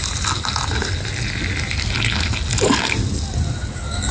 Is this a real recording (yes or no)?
yes